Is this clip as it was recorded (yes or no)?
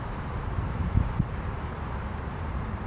no